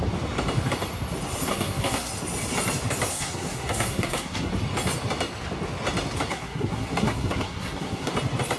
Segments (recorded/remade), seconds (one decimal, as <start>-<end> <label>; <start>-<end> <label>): 0.0-1.5 recorded; 1.5-2.1 remade; 2.1-3.1 recorded; 3.1-4.5 remade; 4.5-6.3 recorded; 6.3-8.1 remade; 8.1-8.6 recorded